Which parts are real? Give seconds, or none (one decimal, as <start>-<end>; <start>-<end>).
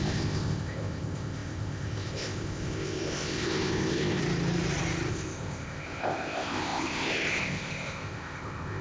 4.2-5.1